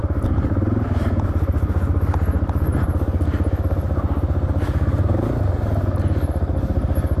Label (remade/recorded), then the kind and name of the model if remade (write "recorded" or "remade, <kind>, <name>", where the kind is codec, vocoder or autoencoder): recorded